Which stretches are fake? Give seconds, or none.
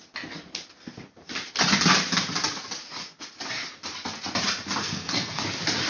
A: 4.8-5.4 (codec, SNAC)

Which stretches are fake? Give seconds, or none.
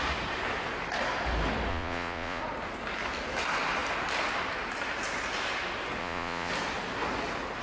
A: 1.7-2.4 (vocoder, Vocos); 6.0-6.5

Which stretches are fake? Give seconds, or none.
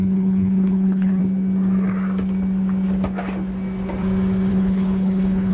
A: 0.0-1.2 (codec, HILCodec); 4.5-5.5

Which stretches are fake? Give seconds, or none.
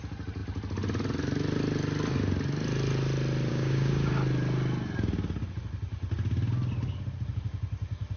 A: 3.5-4.1 (codec, DAC)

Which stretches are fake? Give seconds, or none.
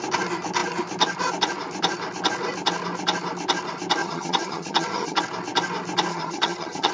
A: 4.0-5.2 (vocoder, HiFi-GAN); 6.1-6.9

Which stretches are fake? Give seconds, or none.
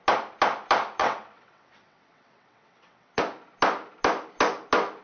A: 1.0-3.2 (vocoder, WaveNeXt)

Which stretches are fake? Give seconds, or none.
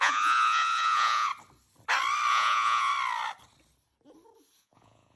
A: 0.0-1.3 (vocoder, Vocos); 2.3-2.9; 4.6-5.2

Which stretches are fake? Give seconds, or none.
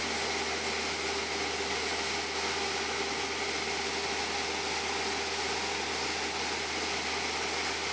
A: none